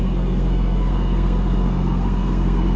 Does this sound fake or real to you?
fake